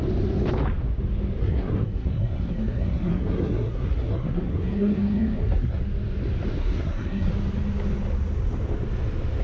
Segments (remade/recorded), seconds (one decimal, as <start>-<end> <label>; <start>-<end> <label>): 0.0-1.4 recorded; 1.4-5.8 remade; 5.8-6.6 recorded; 6.6-7.3 remade; 7.3-9.4 recorded